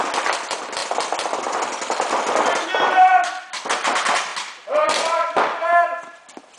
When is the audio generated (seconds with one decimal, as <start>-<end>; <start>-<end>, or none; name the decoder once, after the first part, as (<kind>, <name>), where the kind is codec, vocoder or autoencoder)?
none